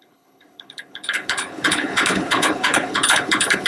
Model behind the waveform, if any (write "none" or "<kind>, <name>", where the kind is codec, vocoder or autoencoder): codec, HILCodec